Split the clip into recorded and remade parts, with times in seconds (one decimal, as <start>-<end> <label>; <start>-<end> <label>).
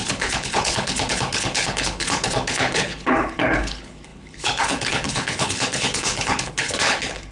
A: 0.0-7.3 remade